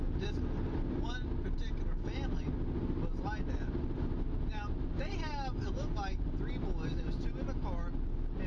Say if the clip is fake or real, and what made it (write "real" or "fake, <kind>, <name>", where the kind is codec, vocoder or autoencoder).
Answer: real